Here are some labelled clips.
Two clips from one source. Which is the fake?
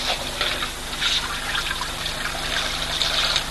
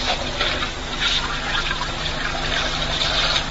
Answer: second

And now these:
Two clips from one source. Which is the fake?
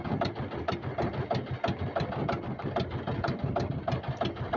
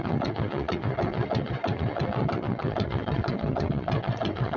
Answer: second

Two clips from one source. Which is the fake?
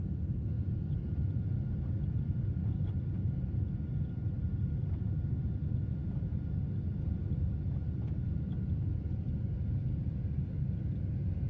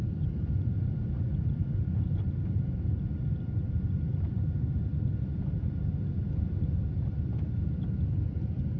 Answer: second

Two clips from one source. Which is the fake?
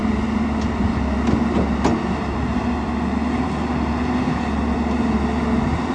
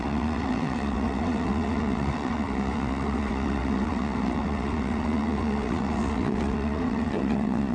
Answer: second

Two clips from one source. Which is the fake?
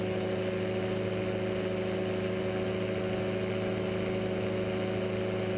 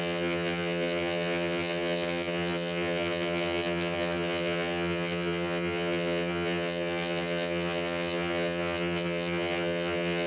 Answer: second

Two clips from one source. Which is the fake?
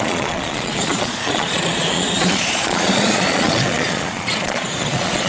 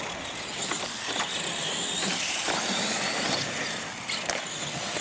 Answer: first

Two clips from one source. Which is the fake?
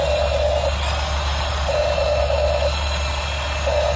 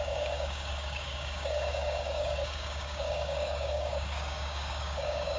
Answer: second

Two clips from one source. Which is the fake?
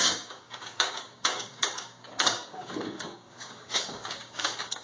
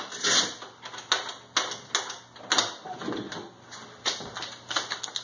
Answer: first